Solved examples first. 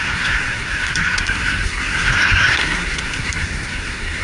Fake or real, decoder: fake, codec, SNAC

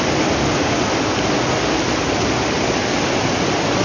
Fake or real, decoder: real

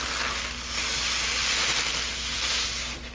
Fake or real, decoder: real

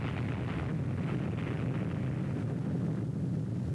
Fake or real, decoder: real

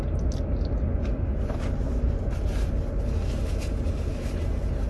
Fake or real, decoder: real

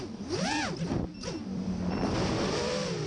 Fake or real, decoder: fake, vocoder, BigVGAN v2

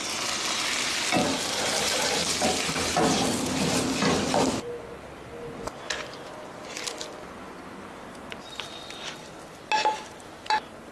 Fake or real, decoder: real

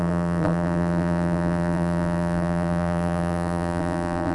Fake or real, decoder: fake, vocoder, BigVGAN v2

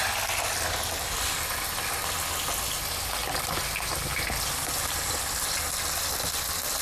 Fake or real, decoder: real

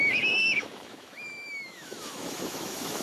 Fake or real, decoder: fake, autoencoder, DAC-VAE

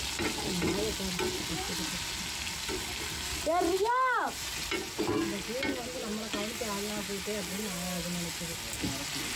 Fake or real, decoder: real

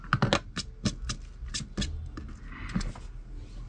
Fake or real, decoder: real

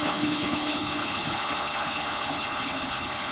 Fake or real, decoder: fake, codec, HILCodec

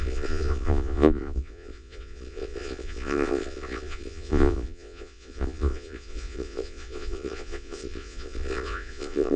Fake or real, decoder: fake, vocoder, Vocos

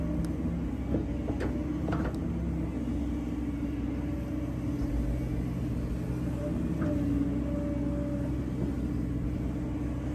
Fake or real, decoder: real